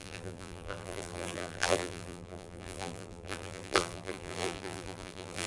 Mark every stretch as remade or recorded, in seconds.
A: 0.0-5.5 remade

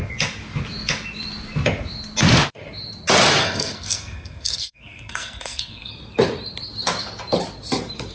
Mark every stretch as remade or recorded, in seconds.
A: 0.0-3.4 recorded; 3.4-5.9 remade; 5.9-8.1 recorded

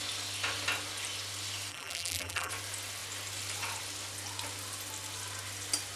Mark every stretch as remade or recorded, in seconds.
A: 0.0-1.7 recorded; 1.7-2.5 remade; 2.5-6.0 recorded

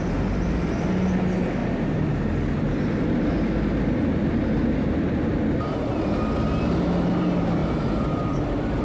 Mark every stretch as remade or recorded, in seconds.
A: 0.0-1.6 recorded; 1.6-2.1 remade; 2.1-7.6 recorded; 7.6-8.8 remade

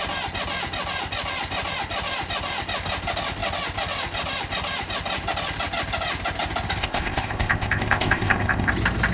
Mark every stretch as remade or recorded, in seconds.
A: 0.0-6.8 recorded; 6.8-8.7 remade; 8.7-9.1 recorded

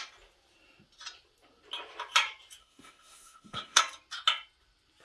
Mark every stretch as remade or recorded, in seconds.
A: 0.0-2.6 recorded; 2.6-3.8 remade; 3.8-5.0 recorded

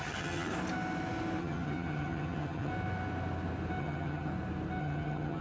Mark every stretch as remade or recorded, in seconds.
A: 0.0-0.5 remade; 0.5-1.4 recorded; 1.4-2.7 remade; 2.7-3.8 recorded; 3.8-4.3 remade; 4.3-4.8 recorded; 4.8-5.4 remade